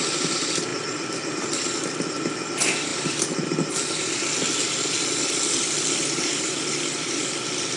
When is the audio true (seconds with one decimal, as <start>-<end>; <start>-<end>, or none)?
0.0-7.8